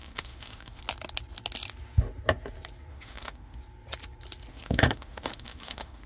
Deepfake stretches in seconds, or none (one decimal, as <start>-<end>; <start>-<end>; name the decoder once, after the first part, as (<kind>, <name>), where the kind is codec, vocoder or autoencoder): 0.0-0.8 (autoencoder, DAC-VAE); 2.9-3.6; 4.5-6.1